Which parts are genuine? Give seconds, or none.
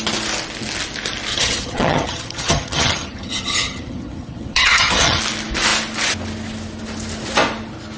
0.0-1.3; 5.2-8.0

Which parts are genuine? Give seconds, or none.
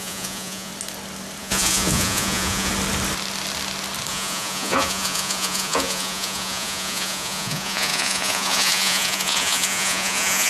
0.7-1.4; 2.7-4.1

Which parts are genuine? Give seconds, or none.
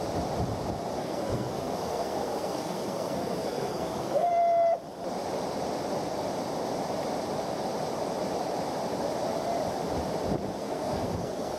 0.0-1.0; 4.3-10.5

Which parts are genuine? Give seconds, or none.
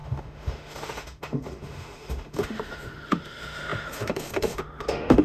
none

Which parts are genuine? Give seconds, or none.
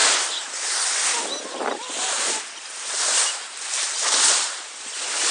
0.0-5.3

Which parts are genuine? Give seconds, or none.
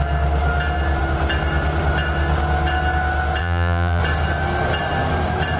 0.0-3.4; 4.0-5.6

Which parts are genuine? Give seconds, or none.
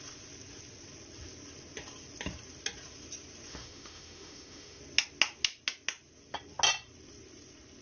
0.0-3.5; 4.8-7.8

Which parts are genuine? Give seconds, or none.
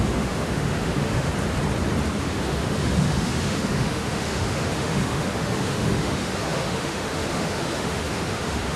1.3-2.2